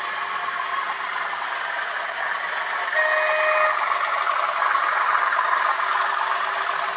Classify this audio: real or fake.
real